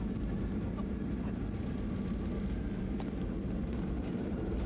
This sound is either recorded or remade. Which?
recorded